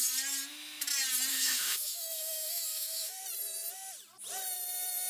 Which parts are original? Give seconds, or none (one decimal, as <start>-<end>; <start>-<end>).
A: 0.0-1.3; 3.2-5.1